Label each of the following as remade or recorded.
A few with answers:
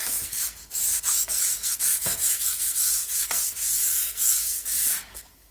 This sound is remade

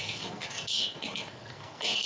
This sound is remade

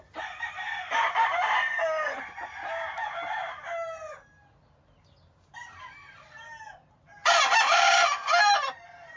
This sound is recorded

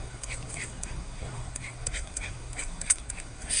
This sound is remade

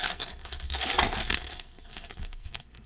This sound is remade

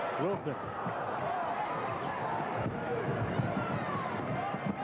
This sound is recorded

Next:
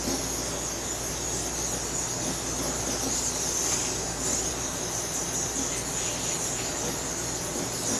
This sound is recorded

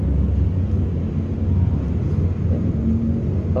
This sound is recorded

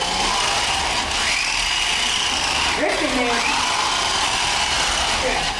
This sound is recorded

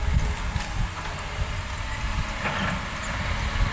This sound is recorded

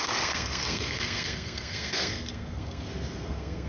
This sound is remade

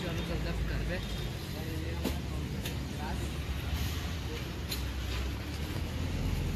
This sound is recorded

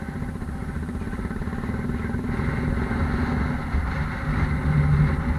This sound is recorded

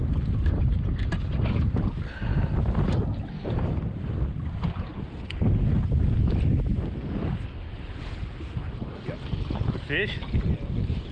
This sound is recorded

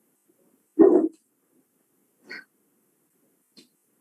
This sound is recorded